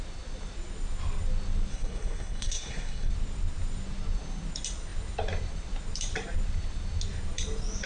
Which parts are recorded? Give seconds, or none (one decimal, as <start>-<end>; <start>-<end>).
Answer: 0.0-1.7; 3.1-7.9